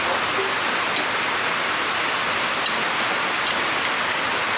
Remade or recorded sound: recorded